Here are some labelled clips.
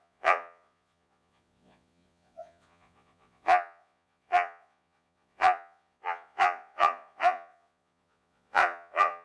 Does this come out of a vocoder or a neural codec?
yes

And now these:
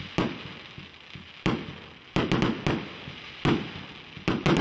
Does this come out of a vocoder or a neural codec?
no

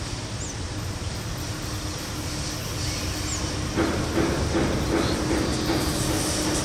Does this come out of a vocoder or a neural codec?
no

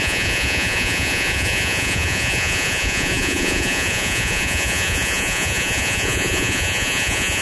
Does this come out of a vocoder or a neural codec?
yes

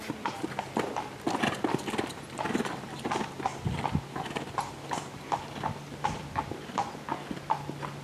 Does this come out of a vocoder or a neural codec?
no